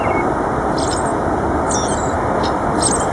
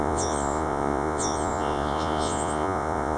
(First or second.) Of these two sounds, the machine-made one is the second